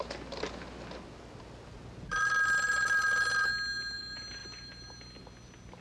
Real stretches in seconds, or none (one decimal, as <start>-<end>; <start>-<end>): 0.0-5.8